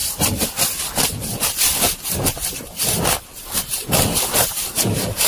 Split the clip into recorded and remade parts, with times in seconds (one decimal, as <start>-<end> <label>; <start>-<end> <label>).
0.0-4.4 recorded; 4.4-5.3 remade